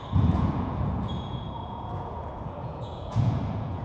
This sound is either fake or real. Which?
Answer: fake